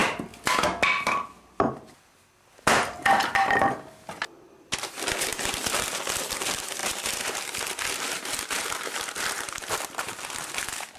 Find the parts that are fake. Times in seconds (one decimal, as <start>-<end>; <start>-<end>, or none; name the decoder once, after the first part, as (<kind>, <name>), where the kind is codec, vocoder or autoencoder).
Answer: 5.3-6.2 (vocoder, BigVGAN v2); 6.8-10.2